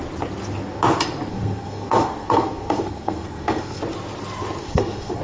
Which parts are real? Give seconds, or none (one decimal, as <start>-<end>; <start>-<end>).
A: 0.0-1.3; 3.8-4.6